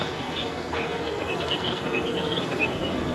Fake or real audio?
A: fake